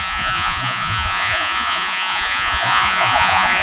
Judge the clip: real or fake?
fake